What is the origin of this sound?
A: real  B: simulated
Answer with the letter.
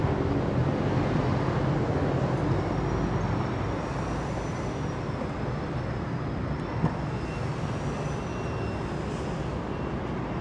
A